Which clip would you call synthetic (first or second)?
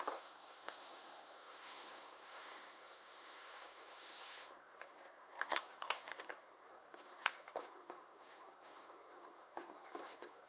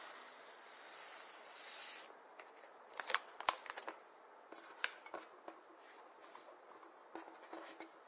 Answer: first